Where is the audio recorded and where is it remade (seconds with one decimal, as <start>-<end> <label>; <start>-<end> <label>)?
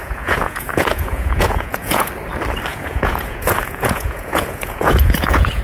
0.0-2.1 remade; 2.1-2.7 recorded; 2.7-5.6 remade